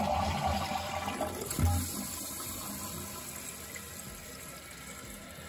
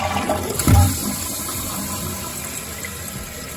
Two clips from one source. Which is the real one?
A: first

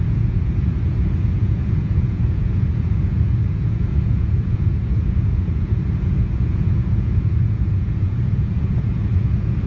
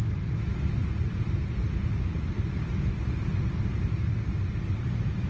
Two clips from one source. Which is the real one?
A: second